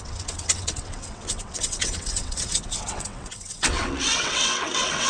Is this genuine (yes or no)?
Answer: no